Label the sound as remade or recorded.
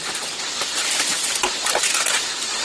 recorded